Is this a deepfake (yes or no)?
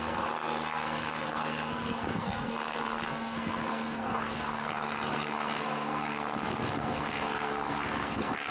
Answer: yes